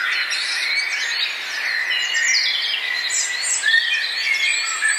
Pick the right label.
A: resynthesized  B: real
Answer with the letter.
B